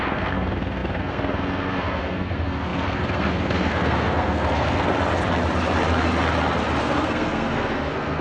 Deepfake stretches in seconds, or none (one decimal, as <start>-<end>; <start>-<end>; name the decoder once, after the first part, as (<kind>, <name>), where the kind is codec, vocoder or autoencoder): 0.0-4.9 (codec, SNAC); 6.8-8.2